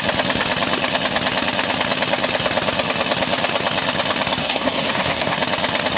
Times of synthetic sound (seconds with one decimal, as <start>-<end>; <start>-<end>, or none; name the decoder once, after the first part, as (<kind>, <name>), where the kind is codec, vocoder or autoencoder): 4.4-5.4 (codec, SNAC)